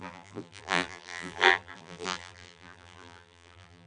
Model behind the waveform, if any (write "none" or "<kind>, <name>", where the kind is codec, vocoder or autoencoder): vocoder, BigVGAN v2